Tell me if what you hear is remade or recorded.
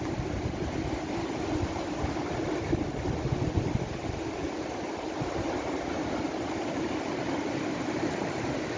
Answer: recorded